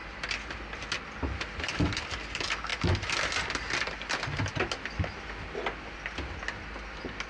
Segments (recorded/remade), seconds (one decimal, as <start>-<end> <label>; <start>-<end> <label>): 0.0-7.3 recorded